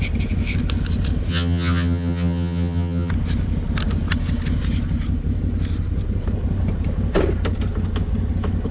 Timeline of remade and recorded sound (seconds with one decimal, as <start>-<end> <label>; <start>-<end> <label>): 0.0-1.3 recorded; 1.3-3.1 remade; 3.1-8.7 recorded